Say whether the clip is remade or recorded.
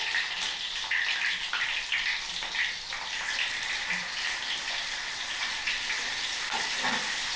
recorded